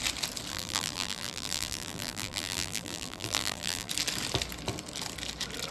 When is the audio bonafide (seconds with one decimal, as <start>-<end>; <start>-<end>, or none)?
0.0-0.5; 3.9-5.7